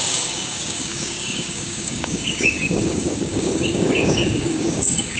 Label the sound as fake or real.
fake